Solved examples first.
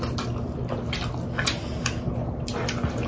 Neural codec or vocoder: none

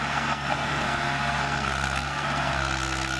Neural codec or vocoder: codec, SNAC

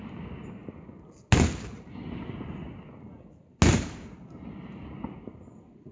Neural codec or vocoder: none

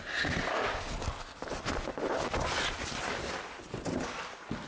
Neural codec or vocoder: none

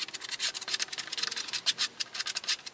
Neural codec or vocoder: none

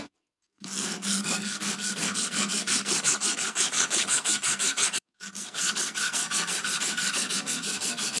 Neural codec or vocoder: codec, SNAC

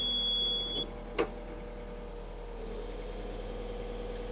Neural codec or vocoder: none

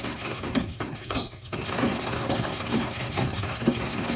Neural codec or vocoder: codec, SNAC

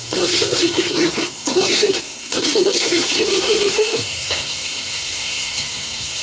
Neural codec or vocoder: codec, SNAC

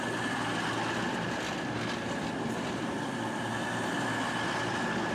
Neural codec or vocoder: none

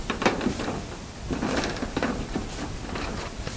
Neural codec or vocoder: none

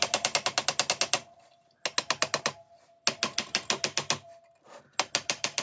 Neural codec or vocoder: none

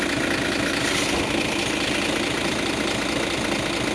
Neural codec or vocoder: none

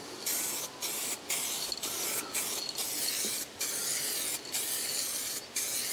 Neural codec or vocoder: none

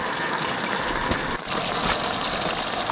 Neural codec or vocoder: none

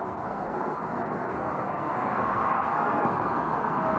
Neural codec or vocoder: codec, SNAC